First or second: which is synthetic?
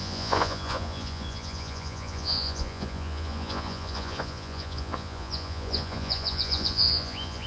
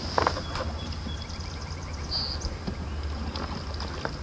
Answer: first